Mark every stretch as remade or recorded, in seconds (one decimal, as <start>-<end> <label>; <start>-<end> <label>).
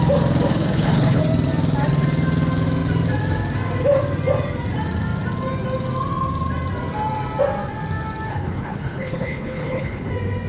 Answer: 0.0-0.5 recorded; 0.5-1.2 remade; 1.2-8.3 recorded; 8.3-10.1 remade; 10.1-10.5 recorded